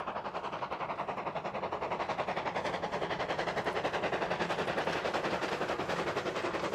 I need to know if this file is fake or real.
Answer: real